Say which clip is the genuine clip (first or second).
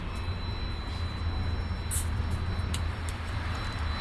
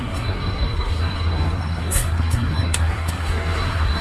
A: first